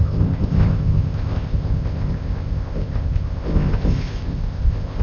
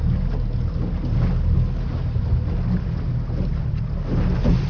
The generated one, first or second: first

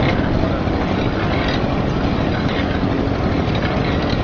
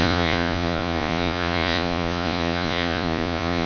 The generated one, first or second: second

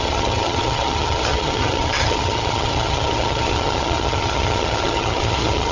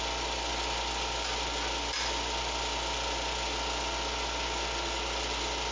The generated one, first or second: first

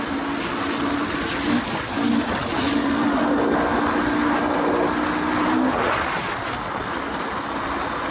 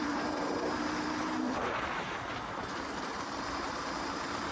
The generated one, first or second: second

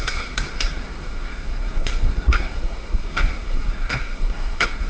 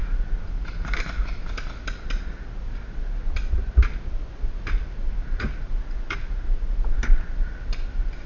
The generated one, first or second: first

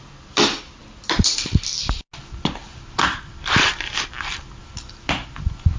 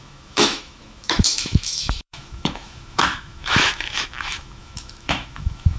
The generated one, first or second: second